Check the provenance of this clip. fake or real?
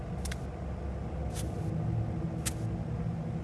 real